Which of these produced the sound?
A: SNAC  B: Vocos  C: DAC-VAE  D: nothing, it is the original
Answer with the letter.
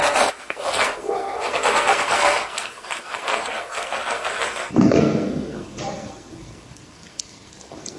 A